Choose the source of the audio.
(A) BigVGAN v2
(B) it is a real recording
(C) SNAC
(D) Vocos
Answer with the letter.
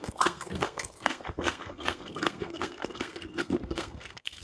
C